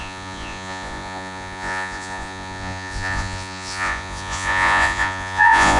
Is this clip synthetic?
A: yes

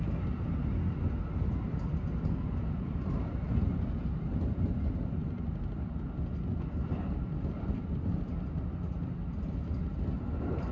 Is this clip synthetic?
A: no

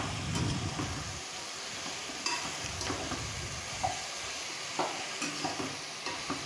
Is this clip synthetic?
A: no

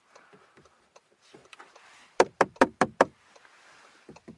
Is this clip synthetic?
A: yes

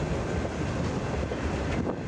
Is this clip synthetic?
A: no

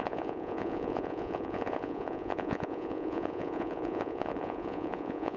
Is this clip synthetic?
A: yes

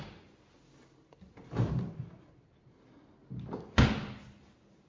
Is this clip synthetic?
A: no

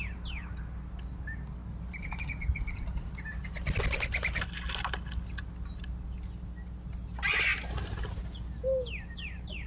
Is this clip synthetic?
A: no